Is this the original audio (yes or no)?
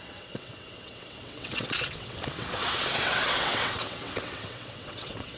no